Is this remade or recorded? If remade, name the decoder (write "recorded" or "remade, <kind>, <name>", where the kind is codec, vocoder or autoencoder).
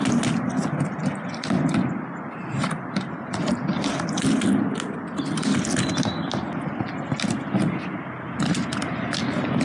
recorded